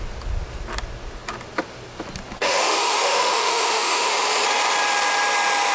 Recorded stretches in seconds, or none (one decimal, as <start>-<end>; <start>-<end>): 0.0-2.4; 4.1-5.7